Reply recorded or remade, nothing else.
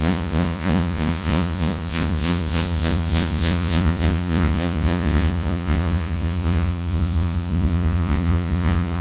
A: remade